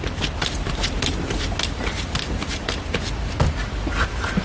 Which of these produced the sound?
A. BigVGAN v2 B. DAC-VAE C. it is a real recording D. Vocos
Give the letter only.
C